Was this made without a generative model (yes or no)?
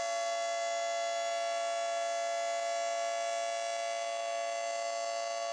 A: yes